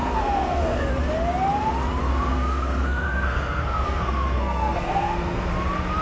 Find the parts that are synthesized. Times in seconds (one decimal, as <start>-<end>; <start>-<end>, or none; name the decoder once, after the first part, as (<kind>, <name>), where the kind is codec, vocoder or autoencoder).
0.0-0.9 (codec, SNAC); 2.0-5.5